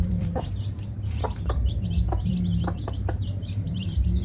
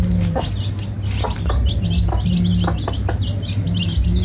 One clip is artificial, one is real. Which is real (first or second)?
second